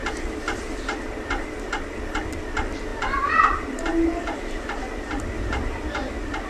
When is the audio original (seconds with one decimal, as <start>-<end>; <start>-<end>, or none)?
0.7-2.9; 6.1-6.5